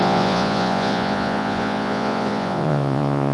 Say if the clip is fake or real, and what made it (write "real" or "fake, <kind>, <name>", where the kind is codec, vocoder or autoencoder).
fake, vocoder, Vocos